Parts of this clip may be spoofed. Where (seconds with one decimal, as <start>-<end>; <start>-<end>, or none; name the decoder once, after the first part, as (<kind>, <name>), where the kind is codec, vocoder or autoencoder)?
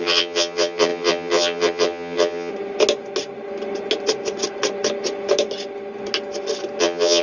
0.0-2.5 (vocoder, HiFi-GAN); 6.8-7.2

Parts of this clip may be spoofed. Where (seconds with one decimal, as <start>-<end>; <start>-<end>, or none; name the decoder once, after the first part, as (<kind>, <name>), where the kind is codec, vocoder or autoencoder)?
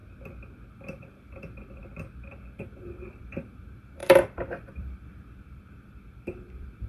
0.7-1.8 (vocoder, BigVGAN v2); 2.4-6.9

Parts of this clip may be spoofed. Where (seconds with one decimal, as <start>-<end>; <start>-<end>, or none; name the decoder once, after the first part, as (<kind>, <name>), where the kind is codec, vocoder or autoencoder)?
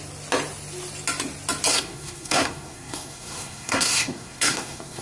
1.7-5.0 (codec, SNAC)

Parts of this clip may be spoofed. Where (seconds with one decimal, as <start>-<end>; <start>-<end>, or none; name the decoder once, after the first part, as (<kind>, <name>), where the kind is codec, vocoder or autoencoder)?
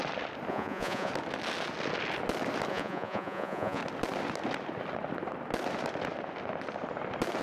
0.5-1.1 (vocoder, Vocos); 2.7-3.8